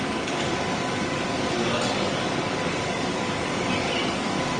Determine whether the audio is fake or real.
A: fake